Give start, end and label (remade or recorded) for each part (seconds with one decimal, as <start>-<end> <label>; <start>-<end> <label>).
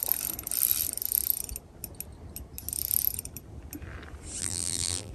0.0-4.4 recorded; 4.4-5.1 remade